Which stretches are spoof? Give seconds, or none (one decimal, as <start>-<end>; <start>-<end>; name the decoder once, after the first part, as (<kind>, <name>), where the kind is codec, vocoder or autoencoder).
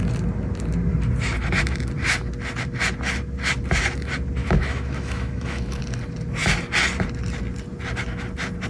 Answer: 4.4-5.8 (autoencoder, DAC-VAE)